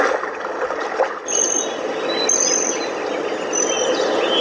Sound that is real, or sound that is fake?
real